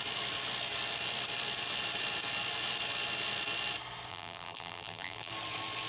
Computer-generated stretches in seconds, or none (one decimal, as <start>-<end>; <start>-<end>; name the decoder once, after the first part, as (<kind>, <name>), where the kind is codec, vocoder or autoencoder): 4.1-5.3 (vocoder, BigVGAN v2)

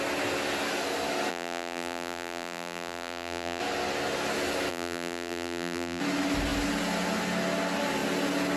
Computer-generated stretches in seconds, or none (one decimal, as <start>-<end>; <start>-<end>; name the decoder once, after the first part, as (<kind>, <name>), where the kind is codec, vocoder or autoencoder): 1.3-3.6 (vocoder, BigVGAN v2); 4.7-6.0

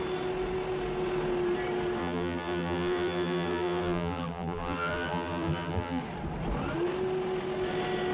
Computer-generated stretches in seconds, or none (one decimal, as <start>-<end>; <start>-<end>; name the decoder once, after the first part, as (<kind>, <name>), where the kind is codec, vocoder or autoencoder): 2.0-6.0 (vocoder, BigVGAN v2)